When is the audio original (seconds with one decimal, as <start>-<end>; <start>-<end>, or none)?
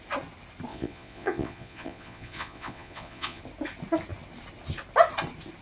0.0-0.7; 3.4-5.6